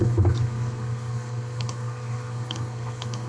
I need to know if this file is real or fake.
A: fake